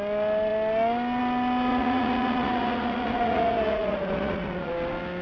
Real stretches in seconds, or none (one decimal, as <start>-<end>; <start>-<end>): 0.0-1.7; 4.7-5.2